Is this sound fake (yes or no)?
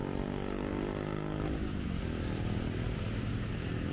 no